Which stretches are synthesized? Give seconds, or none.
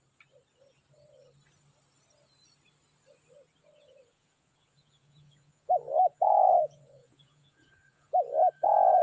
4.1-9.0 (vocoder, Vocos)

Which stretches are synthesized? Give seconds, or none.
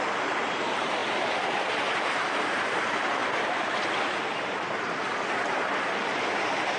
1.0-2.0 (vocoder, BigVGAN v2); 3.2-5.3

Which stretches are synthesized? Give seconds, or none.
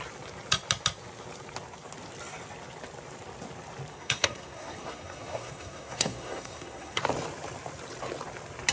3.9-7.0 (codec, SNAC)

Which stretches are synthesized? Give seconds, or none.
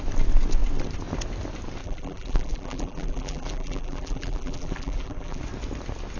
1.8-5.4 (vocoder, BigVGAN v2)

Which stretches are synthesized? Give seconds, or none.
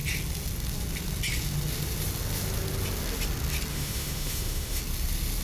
3.7-4.8 (autoencoder, DAC-VAE)